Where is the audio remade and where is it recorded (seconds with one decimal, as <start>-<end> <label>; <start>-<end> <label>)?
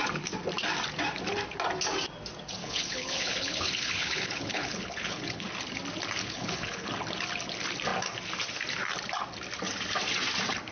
0.0-2.6 recorded; 2.6-5.5 remade; 5.5-6.2 recorded; 6.2-6.9 remade; 6.9-10.7 recorded